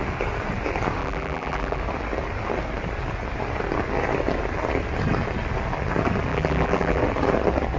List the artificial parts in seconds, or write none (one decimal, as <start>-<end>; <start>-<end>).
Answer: 1.0-1.8; 6.3-7.0